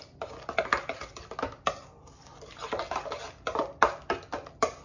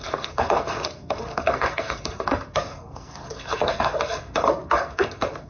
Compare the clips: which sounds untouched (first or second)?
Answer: first